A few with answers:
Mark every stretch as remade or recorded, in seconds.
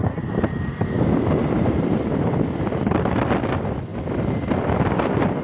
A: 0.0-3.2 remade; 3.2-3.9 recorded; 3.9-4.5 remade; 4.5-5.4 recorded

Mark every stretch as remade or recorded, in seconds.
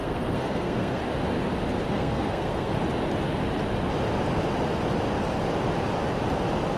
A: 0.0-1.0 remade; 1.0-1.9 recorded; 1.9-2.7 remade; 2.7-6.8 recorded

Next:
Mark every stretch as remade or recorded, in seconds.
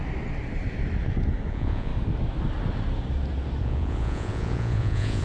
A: 0.0-1.5 recorded; 1.5-1.9 remade; 1.9-3.6 recorded; 3.6-5.2 remade